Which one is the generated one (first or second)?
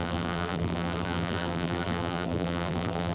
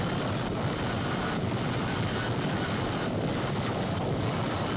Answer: first